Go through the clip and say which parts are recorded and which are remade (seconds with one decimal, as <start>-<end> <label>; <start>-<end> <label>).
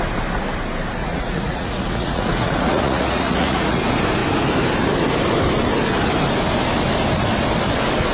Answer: 0.0-1.0 recorded; 1.0-3.8 remade; 3.8-8.1 recorded